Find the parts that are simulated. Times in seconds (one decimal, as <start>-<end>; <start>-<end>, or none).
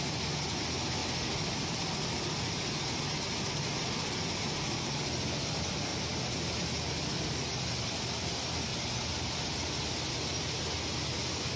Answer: none